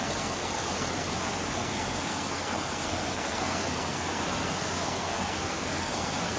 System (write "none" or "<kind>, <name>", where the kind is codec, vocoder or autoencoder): codec, SNAC